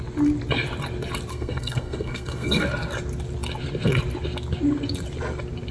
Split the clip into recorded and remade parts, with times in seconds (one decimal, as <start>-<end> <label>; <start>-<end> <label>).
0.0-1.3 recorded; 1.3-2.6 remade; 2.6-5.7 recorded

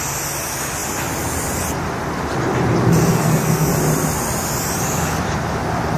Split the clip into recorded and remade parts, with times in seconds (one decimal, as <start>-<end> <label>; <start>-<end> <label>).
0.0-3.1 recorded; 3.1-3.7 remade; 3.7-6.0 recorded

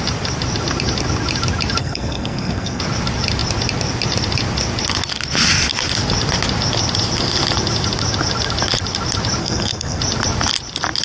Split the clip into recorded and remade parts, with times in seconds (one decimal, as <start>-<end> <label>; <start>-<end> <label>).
0.0-1.8 recorded; 1.8-2.8 remade; 2.8-9.4 recorded; 9.4-10.0 remade; 10.0-11.0 recorded